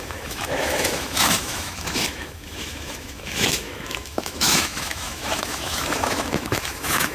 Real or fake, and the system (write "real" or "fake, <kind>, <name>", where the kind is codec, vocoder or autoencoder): fake, autoencoder, DAC-VAE